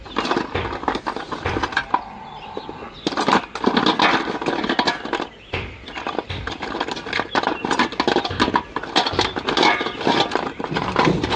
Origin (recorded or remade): recorded